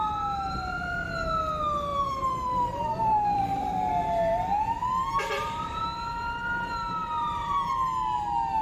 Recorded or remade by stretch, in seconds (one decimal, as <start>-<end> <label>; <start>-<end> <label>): 0.0-1.9 recorded; 1.9-3.9 remade; 3.9-4.8 recorded; 4.8-5.8 remade; 5.8-7.0 recorded; 7.0-7.7 remade; 7.7-8.6 recorded